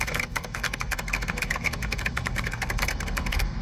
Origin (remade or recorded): remade